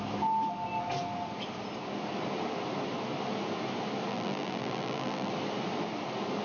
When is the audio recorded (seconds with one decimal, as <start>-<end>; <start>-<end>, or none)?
0.0-4.1; 5.3-6.4